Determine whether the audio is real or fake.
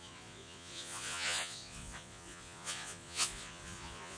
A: fake